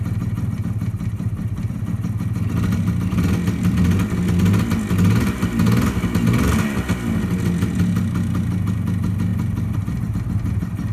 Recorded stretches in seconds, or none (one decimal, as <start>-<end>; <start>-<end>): 0.0-10.9